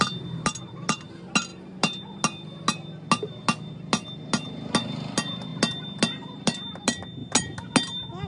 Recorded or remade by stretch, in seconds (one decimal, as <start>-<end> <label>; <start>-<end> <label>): 0.0-8.3 recorded